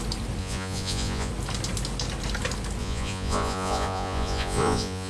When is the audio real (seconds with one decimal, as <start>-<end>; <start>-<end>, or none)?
0.0-0.4; 1.3-2.8

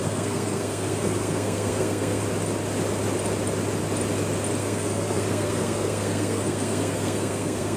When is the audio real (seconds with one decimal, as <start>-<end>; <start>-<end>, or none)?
2.2-4.6